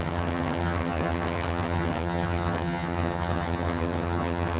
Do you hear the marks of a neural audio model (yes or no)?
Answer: yes